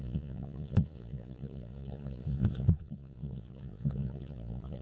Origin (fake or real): fake